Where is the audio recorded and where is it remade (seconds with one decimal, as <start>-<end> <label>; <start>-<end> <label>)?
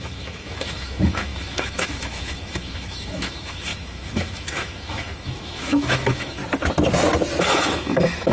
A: 0.0-6.4 remade; 6.4-7.4 recorded; 7.4-8.3 remade